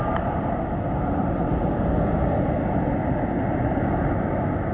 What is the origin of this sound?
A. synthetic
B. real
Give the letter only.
B